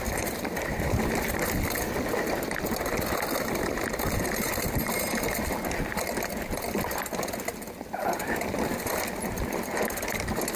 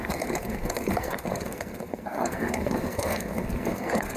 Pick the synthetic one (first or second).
second